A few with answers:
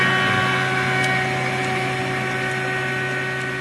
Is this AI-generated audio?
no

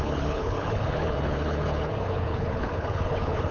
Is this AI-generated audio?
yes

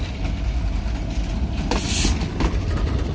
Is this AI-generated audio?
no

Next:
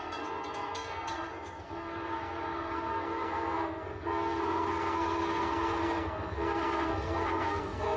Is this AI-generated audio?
yes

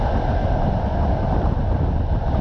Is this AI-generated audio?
no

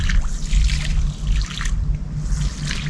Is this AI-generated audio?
no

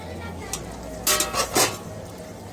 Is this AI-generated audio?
no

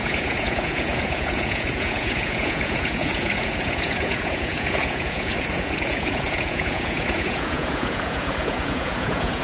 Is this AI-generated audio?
yes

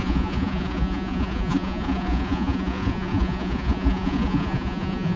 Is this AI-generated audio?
yes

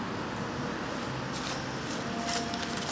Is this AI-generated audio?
no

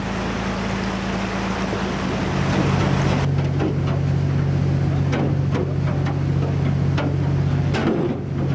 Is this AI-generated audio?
no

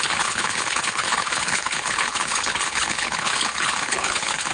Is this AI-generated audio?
yes